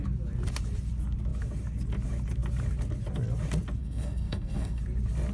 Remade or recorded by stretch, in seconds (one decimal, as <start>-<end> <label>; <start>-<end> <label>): 0.0-3.8 recorded; 3.8-4.8 remade; 4.8-5.3 recorded